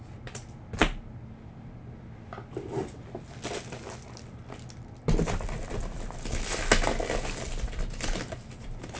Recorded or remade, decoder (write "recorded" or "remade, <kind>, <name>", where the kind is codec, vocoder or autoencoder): recorded